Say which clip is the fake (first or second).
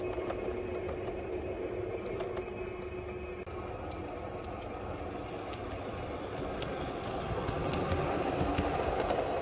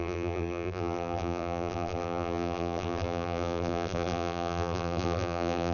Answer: second